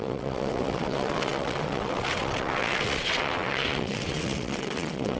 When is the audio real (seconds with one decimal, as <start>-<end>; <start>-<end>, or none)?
none